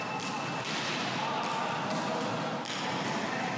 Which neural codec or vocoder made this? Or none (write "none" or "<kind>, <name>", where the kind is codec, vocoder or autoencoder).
none